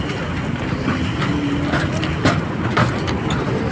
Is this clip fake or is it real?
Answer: real